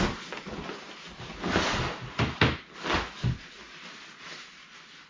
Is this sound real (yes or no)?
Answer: yes